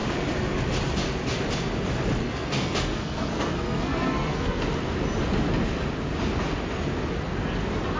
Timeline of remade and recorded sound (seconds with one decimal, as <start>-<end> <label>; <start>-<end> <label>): 0.0-2.2 recorded; 2.2-4.6 remade; 4.6-8.0 recorded